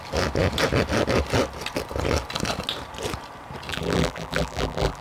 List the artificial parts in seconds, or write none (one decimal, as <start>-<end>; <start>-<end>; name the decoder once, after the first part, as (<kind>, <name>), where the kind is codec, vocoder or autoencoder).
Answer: 3.7-5.0 (vocoder, BigVGAN v2)